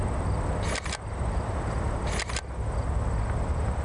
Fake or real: real